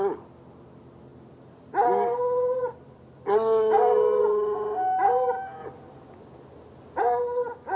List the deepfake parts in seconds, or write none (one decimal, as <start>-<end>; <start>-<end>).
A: none